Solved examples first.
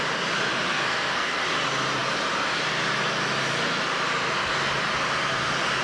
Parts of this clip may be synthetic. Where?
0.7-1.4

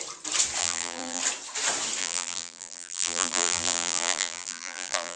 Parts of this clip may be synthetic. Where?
0.6-1.2; 2.0-5.2

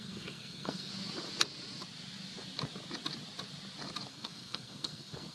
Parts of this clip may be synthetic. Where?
0.0-0.9; 4.1-5.3

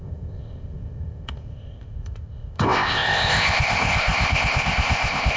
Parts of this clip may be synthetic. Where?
0.0-5.4

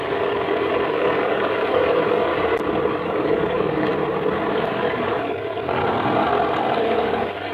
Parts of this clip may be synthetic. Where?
0.0-2.3; 2.9-3.9; 4.5-5.8; 6.8-7.5

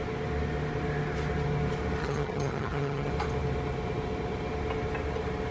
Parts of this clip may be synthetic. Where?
2.0-3.1

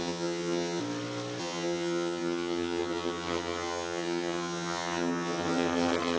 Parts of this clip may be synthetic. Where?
0.0-0.8; 1.4-6.2